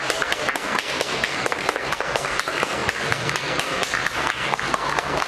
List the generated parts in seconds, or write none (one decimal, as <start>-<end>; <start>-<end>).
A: 0.0-5.3